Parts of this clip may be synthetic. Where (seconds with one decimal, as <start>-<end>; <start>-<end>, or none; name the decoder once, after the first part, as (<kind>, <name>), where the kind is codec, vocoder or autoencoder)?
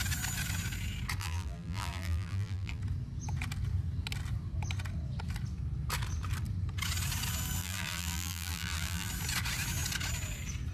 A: 1.2-2.8 (vocoder, BigVGAN v2); 7.6-9.1